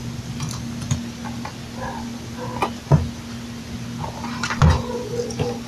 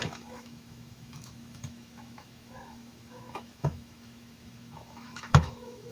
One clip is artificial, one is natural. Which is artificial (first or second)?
second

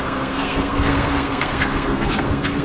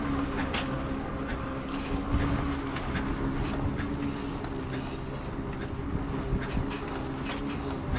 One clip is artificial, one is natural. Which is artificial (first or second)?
first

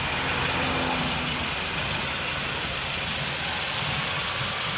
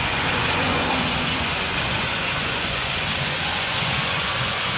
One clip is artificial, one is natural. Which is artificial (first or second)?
second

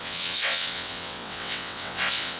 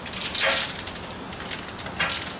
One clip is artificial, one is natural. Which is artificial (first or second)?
first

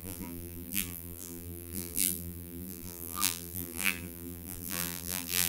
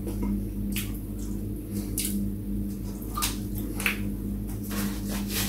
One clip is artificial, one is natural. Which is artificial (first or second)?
first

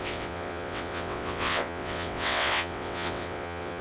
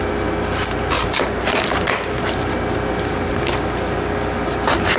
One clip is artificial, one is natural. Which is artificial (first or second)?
first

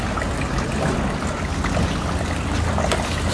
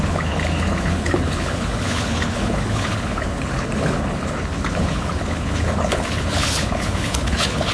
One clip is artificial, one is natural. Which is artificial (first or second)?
second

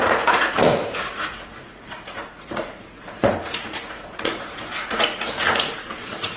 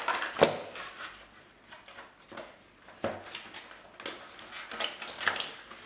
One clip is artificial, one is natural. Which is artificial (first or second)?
first